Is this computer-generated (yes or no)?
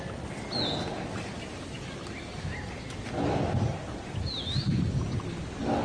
no